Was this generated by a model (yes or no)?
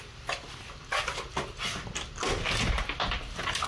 no